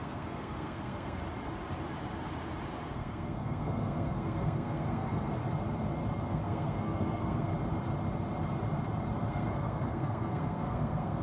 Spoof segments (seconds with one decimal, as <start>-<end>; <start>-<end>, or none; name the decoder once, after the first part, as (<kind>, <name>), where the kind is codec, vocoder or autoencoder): 0.0-1.2 (codec, SNAC); 2.9-5.4; 6.3-7.5; 9.3-11.2